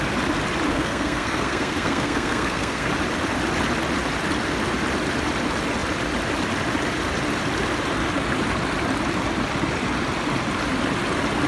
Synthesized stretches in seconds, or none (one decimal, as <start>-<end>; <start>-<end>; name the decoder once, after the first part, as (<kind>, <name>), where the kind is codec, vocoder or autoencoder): 0.7-2.9 (codec, SNAC)